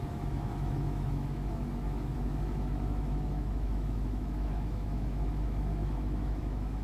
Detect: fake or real fake